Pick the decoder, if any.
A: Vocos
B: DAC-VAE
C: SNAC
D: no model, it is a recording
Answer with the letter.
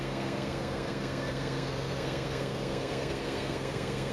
C